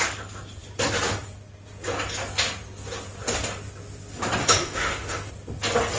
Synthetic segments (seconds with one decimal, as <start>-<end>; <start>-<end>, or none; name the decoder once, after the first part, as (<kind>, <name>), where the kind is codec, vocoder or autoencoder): 4.4-5.3 (autoencoder, DAC-VAE)